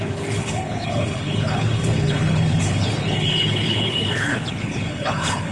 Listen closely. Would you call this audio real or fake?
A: fake